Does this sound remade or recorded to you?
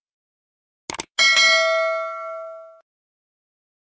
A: recorded